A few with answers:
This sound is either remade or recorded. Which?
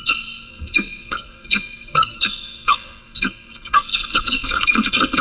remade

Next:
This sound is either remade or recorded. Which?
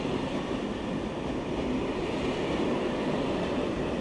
recorded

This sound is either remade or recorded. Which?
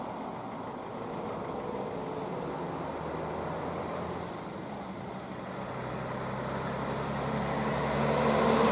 recorded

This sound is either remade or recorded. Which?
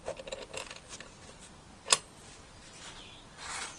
recorded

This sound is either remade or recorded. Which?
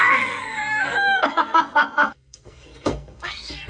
remade